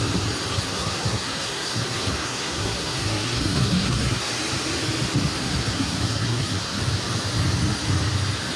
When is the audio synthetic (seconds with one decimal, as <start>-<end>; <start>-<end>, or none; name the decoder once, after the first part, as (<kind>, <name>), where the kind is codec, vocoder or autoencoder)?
0.5-4.3 (codec, SNAC); 5.4-6.8